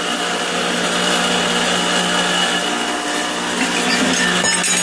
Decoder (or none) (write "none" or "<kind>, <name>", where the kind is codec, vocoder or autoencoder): none